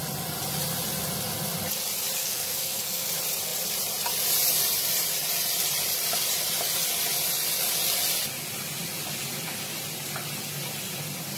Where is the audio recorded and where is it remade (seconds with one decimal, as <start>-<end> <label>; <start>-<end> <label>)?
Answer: 0.0-2.2 recorded; 2.2-3.1 remade; 3.1-11.4 recorded